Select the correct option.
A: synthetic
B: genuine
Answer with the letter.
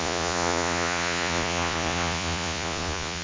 A